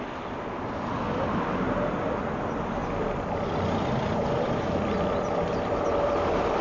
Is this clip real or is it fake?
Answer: real